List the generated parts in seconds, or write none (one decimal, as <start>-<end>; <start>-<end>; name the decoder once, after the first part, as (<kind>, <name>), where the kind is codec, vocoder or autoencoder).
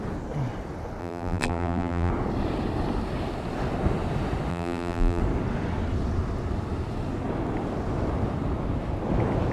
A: 1.0-2.1 (vocoder, BigVGAN v2); 4.5-5.2